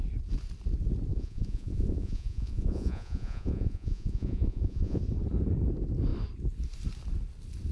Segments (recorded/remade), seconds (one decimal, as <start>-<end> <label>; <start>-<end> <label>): 0.0-1.1 recorded; 1.1-5.0 remade; 5.0-7.7 recorded